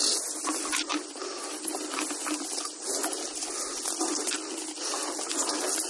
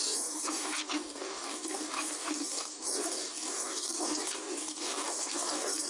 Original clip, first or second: first